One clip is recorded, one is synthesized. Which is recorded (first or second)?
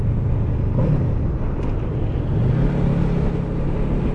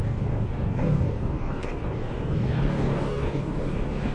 first